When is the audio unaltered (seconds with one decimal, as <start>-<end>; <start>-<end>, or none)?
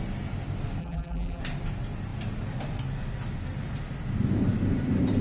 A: 0.0-0.8; 1.4-5.2